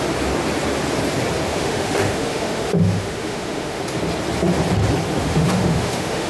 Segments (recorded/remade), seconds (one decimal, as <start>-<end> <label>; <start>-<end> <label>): 0.0-1.5 recorded; 1.5-3.8 remade; 3.8-5.2 recorded; 5.2-6.3 remade